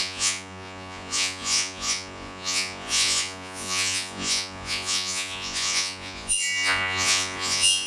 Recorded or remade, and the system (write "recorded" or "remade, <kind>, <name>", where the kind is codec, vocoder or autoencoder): remade, vocoder, Vocos